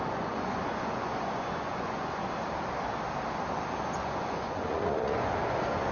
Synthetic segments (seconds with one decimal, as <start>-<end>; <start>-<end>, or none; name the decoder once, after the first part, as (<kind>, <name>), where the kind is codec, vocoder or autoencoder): 0.0-2.2 (vocoder, Vocos); 4.0-5.9